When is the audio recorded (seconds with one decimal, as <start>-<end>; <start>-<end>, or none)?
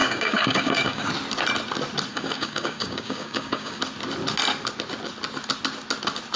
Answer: 1.1-2.1; 3.8-6.4